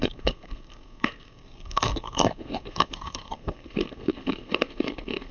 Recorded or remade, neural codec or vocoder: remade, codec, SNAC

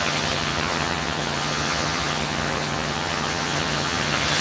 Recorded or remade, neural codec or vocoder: remade, vocoder, HiFi-GAN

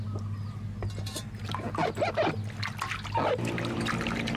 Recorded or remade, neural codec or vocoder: recorded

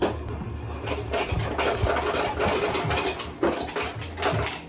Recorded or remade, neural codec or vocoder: recorded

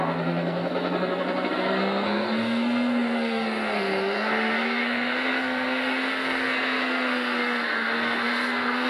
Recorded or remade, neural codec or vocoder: remade, codec, SNAC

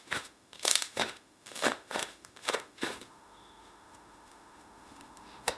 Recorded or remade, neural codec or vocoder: remade, autoencoder, DAC-VAE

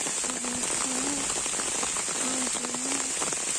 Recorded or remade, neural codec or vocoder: recorded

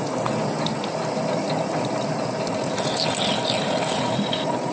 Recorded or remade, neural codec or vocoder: recorded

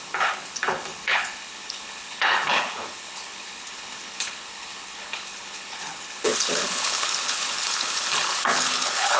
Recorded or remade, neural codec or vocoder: remade, codec, HILCodec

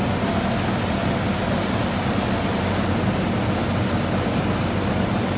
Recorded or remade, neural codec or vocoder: recorded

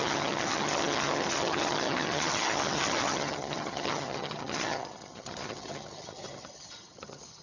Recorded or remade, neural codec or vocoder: remade, vocoder, HiFi-GAN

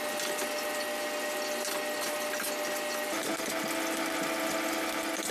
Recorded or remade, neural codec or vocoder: recorded